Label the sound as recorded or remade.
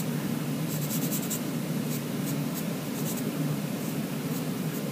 remade